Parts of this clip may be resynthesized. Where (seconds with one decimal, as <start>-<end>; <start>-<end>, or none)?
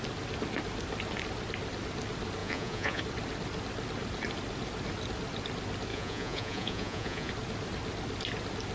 2.4-3.0; 5.9-7.3